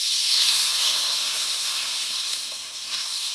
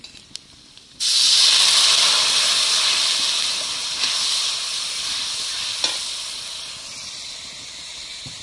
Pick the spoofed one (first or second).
first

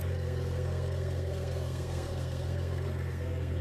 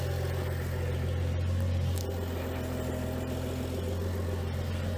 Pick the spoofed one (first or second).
first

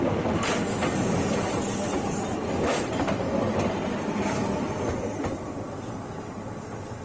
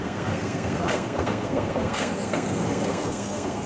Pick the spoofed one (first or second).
second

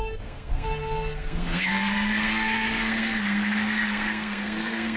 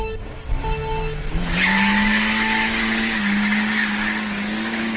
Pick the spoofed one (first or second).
first